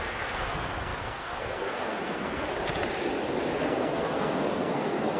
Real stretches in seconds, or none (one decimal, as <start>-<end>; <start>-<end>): 2.5-3.6